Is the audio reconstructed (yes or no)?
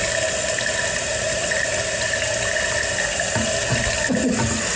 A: no